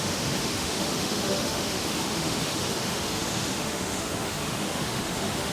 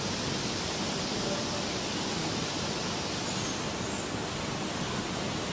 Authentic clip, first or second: second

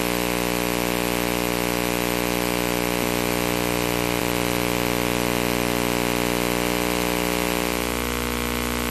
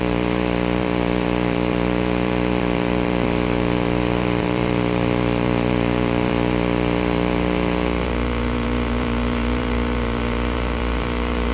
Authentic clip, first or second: first